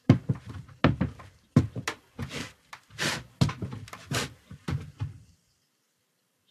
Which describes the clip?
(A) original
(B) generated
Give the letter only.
A